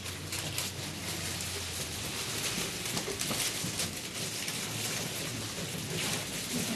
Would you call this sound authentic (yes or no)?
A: yes